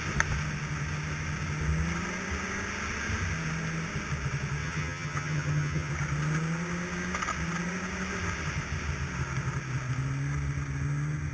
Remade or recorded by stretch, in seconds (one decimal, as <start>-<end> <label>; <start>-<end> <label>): 0.0-4.6 recorded; 4.6-5.9 remade; 5.9-11.3 recorded